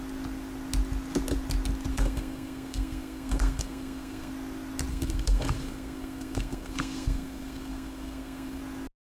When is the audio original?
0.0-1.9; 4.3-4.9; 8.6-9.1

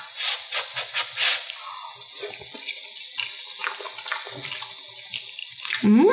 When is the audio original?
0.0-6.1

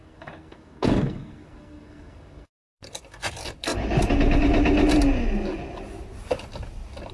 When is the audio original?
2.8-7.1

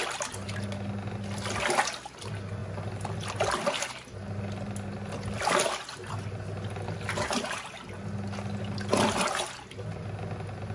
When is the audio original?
0.0-10.7